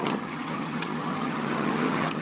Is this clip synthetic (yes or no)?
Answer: yes